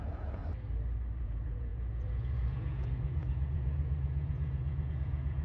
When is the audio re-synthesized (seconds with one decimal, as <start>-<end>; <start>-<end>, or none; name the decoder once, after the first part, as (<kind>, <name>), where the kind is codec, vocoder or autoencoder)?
0.0-0.4 (vocoder, Vocos); 1.2-5.4